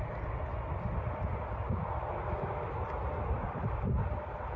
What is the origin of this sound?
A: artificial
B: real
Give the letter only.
B